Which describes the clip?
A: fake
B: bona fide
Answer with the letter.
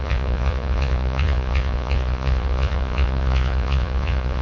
A